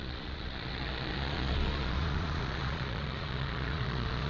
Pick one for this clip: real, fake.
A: fake